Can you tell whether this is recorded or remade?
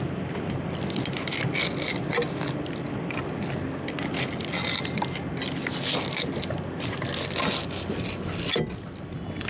recorded